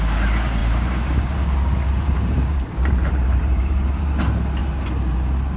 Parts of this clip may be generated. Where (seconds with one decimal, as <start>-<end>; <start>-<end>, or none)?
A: 0.6-4.0; 4.6-5.6